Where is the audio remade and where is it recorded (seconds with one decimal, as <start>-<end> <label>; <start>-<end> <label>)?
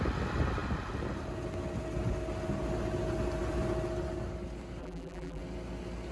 0.0-4.8 recorded; 4.8-5.4 remade; 5.4-6.1 recorded